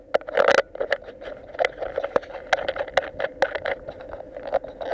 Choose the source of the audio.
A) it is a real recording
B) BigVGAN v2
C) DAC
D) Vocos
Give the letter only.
A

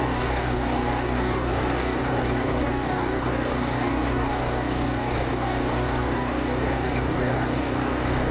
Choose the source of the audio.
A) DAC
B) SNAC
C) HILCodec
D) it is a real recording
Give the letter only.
A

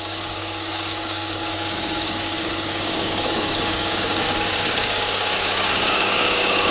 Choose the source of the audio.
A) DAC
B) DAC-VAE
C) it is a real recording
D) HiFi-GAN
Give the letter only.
A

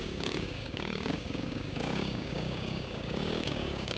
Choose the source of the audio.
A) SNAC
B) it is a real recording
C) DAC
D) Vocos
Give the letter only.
C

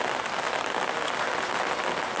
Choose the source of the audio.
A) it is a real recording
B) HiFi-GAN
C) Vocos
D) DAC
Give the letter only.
A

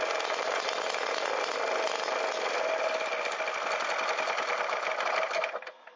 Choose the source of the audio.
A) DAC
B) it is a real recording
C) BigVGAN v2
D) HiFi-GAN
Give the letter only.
B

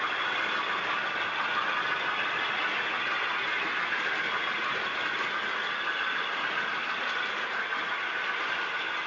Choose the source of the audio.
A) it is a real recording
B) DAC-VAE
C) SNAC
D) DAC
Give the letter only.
A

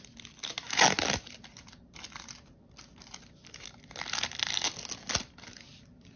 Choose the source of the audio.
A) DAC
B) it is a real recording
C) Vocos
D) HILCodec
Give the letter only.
B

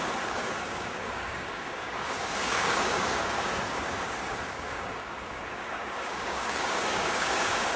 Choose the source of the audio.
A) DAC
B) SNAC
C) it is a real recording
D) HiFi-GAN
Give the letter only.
A